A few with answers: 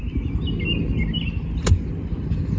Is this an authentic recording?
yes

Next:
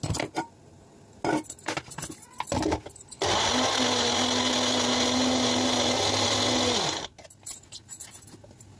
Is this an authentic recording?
yes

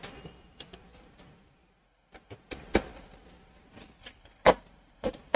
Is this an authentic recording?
no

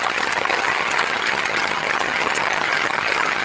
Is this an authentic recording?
no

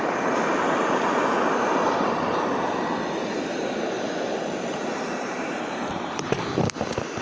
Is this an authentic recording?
no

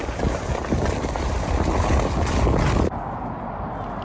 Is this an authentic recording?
yes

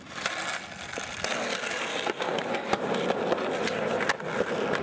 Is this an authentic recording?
yes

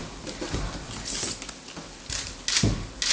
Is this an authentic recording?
yes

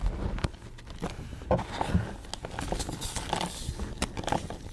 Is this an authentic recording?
yes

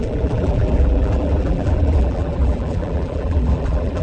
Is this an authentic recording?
no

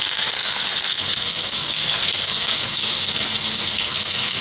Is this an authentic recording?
no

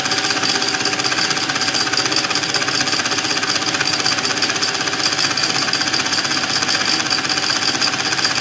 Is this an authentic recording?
yes